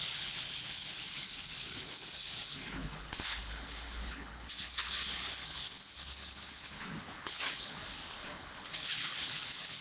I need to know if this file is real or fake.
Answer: fake